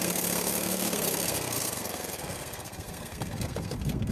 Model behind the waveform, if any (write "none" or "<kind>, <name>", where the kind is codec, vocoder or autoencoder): codec, SNAC